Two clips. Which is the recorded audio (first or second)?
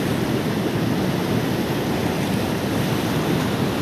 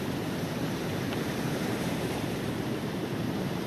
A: first